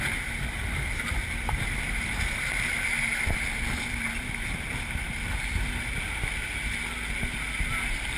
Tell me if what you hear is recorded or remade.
recorded